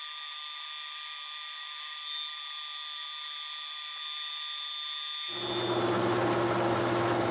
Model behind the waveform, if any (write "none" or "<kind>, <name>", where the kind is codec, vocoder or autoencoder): none